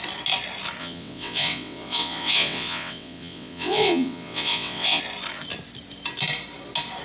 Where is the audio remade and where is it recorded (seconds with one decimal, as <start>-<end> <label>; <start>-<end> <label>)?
0.0-0.8 recorded; 0.8-5.0 remade; 5.0-7.0 recorded